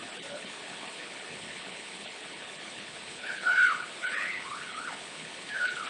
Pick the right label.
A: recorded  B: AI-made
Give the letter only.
B